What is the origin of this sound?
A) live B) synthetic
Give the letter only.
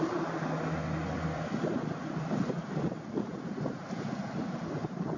A